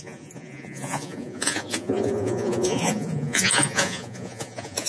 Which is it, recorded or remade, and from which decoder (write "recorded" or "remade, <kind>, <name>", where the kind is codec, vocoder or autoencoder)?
remade, vocoder, Vocos